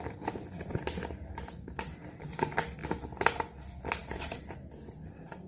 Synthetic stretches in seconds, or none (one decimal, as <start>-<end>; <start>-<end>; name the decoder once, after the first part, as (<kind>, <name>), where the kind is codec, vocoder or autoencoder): none

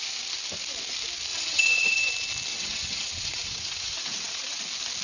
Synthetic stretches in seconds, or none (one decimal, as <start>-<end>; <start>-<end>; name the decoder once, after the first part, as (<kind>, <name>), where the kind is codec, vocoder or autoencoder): 1.3-2.1 (vocoder, WaveNeXt); 2.5-4.6

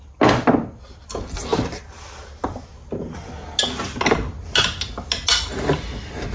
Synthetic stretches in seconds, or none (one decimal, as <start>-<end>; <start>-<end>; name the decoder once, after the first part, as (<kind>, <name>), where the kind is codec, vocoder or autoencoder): none

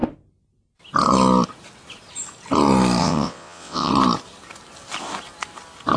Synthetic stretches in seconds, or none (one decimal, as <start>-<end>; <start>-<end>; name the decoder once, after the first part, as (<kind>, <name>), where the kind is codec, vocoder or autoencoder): 3.0-3.9 (vocoder, WaveNeXt)

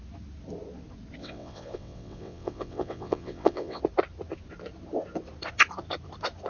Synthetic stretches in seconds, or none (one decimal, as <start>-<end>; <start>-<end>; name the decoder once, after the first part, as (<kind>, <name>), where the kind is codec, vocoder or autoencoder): 1.2-3.8 (vocoder, WaveNeXt)

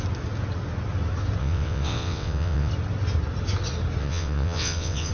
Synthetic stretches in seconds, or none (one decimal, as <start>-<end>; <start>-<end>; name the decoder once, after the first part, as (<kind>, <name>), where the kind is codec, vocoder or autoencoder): 1.4-2.7 (vocoder, WaveNeXt); 4.0-5.1